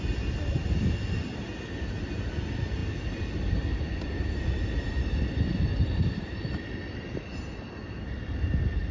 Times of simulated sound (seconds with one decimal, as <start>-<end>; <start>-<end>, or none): none